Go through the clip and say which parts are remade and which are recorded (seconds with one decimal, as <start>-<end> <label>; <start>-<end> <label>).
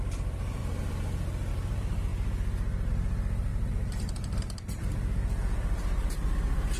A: 0.0-0.6 remade; 0.6-1.5 recorded; 1.5-2.1 remade; 2.1-2.9 recorded; 2.9-6.8 remade